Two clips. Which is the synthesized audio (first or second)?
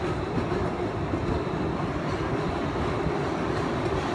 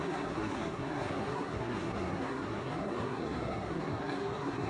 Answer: second